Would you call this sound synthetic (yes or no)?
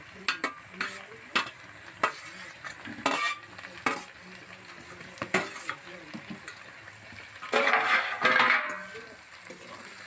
no